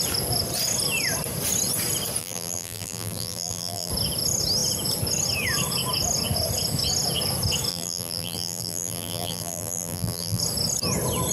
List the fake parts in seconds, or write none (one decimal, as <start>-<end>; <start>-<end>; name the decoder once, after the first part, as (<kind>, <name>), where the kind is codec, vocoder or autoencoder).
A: 2.2-3.9 (vocoder, BigVGAN v2); 7.7-10.4